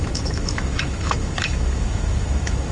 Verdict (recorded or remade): remade